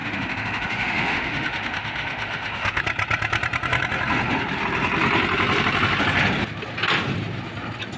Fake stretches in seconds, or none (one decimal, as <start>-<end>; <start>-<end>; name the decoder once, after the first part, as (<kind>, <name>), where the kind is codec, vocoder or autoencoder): 0.0-2.8 (autoencoder, DAC-VAE)